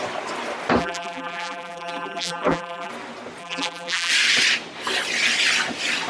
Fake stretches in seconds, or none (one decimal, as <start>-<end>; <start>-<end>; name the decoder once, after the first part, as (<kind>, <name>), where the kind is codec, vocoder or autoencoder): 0.8-2.9 (vocoder, BigVGAN v2); 3.4-4.1